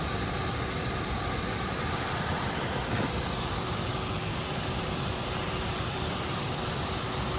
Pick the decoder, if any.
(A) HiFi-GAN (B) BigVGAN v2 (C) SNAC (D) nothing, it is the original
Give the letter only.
B